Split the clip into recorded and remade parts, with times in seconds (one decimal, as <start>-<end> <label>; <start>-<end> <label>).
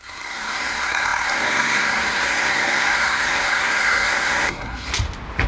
0.0-4.9 remade; 4.9-5.5 recorded